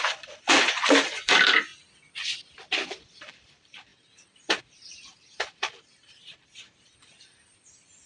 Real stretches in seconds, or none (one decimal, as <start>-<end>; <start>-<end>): 1.7-3.2